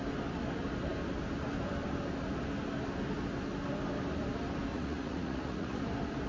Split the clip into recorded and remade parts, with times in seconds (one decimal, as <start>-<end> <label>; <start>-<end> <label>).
0.0-4.7 recorded; 4.7-5.8 remade; 5.8-6.3 recorded

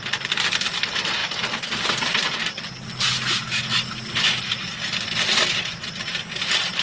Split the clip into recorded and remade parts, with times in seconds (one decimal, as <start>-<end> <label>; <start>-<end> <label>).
0.0-6.8 recorded

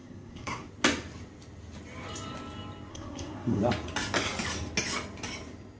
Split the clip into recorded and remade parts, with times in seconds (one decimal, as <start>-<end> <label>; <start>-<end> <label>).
0.0-0.7 remade; 0.7-2.9 recorded; 2.9-3.6 remade; 3.6-5.8 recorded

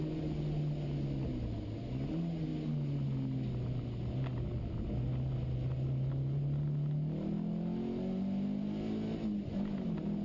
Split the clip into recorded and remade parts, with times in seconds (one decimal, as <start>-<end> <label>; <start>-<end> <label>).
0.0-10.2 recorded

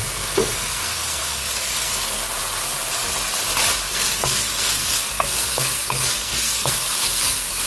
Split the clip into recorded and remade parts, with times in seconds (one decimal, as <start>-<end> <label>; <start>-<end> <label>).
0.0-2.2 remade; 2.2-3.9 recorded; 3.9-7.7 remade